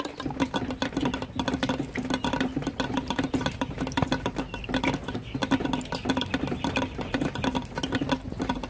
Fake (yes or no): no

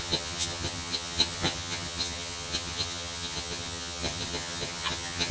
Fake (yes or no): yes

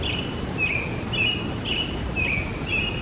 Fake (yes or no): no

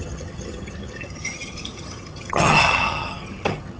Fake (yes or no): yes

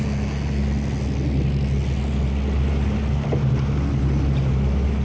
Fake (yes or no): no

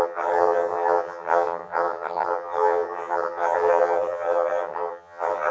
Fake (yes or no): yes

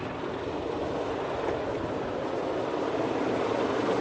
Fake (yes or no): no